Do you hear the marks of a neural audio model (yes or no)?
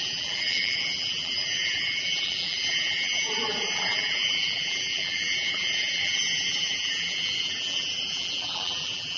yes